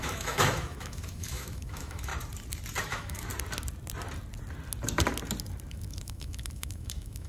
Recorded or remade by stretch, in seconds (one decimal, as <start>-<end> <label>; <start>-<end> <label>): 0.0-2.1 remade; 2.1-2.8 recorded; 2.8-3.3 remade; 3.3-5.7 recorded; 5.7-7.3 remade